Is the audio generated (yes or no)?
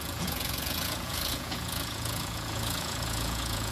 yes